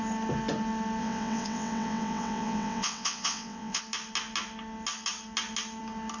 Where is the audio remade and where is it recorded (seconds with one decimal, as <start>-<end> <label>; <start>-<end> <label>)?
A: 0.0-1.0 recorded; 1.0-3.8 remade; 3.8-6.2 recorded